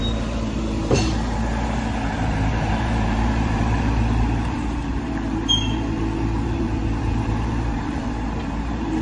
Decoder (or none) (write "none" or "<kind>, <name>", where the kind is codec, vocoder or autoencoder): vocoder, BigVGAN v2